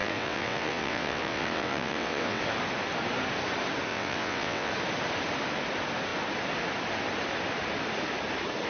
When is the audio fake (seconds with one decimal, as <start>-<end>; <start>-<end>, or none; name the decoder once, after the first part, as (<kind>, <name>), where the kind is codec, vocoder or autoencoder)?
0.0-2.4 (vocoder, WaveNeXt); 3.9-4.7

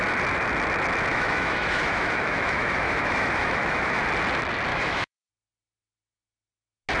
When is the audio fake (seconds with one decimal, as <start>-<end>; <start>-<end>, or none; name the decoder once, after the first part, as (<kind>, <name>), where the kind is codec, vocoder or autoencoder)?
1.1-4.0 (autoencoder, DAC-VAE); 4.7-5.3